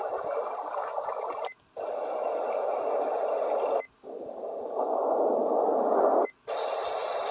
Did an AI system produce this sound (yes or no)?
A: no